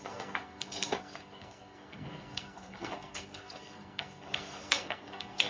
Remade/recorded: remade